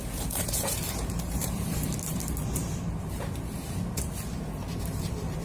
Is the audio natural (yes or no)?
no